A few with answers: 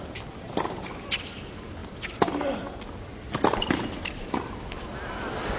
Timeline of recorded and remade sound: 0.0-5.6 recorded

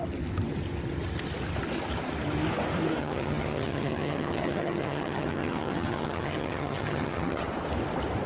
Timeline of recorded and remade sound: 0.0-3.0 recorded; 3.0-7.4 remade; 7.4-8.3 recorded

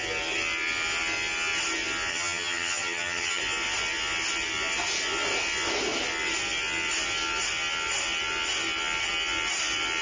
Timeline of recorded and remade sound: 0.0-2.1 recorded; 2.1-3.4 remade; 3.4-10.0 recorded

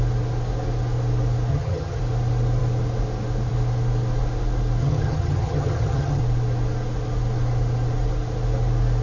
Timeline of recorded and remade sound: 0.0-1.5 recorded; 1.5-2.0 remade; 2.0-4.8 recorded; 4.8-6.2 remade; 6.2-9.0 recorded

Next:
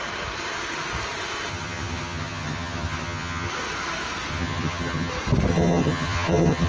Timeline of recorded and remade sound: 0.0-1.5 recorded; 1.5-3.5 remade; 3.5-4.3 recorded; 4.3-5.1 remade; 5.1-5.5 recorded; 5.5-6.7 remade